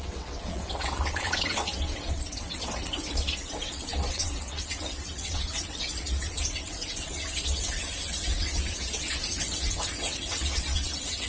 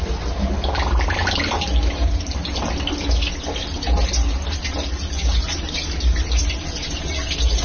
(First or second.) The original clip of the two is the second